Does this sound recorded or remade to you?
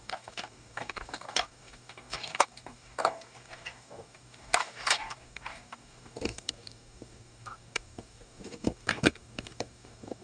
remade